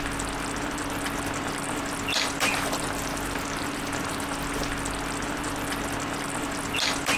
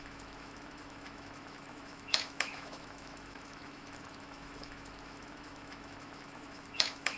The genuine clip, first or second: first